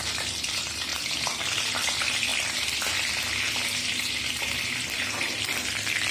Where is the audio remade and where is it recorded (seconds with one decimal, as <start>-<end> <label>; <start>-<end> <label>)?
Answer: 0.0-6.1 recorded